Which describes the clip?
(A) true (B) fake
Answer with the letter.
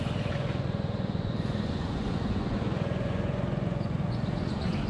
B